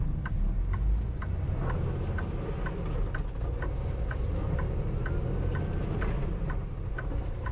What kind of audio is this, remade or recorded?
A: recorded